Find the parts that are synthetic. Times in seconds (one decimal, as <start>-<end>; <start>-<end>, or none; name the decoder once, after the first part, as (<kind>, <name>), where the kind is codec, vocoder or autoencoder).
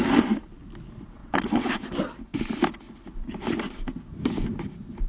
1.2-1.7 (vocoder, WaveNeXt)